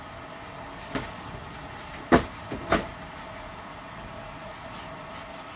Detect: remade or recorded recorded